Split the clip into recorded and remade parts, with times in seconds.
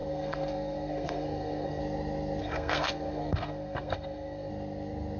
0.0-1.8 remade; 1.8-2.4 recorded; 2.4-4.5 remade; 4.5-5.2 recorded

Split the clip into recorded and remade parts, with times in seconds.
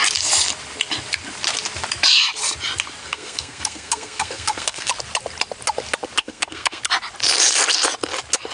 0.0-3.0 recorded; 3.0-4.9 remade; 4.9-6.2 recorded; 6.2-6.8 remade; 6.8-8.5 recorded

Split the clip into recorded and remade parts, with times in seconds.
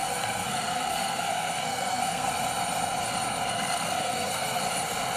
0.0-2.3 remade; 2.3-3.5 recorded; 3.5-4.6 remade; 4.6-5.2 recorded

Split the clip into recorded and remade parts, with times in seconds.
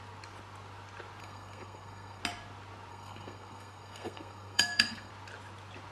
0.0-1.2 recorded; 1.2-2.2 remade; 2.2-2.9 recorded; 2.9-5.1 remade; 5.1-5.9 recorded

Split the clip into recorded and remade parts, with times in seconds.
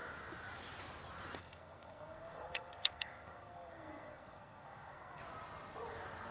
0.0-1.4 recorded; 1.4-5.2 remade; 5.2-6.3 recorded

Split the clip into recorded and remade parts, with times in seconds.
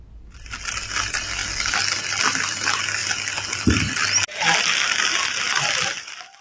0.0-6.4 recorded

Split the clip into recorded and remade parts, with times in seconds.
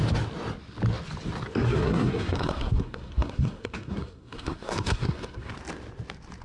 0.0-1.7 recorded; 1.7-5.5 remade; 5.5-6.4 recorded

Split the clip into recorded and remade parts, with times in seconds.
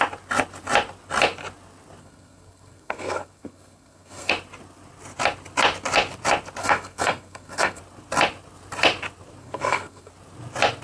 0.0-2.0 recorded; 2.0-4.3 remade; 4.3-6.6 recorded; 6.6-7.8 remade; 7.8-9.4 recorded; 9.4-10.1 remade; 10.1-10.8 recorded